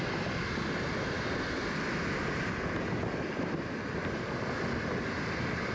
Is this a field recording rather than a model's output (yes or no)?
yes